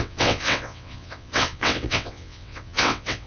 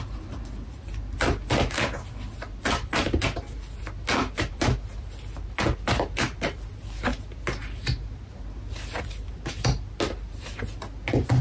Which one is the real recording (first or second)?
second